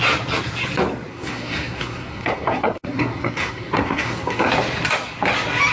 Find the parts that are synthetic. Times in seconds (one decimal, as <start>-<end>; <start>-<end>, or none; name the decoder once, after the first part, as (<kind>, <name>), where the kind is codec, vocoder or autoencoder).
1.1-4.5 (codec, SNAC)